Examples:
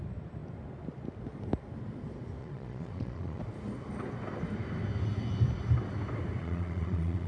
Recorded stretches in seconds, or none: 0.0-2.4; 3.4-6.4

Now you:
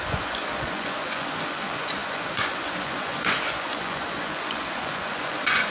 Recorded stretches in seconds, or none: none